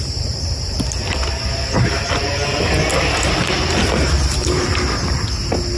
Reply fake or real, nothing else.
real